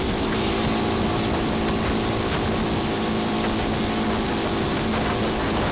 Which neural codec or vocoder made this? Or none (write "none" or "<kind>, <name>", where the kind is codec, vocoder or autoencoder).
none